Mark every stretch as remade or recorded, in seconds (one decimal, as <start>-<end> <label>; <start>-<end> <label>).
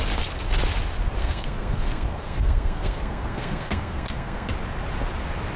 0.0-1.2 recorded; 1.2-4.5 remade; 4.5-5.6 recorded